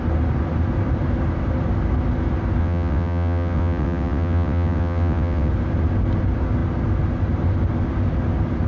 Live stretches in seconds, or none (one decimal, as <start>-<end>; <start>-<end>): 0.0-2.6; 5.5-8.7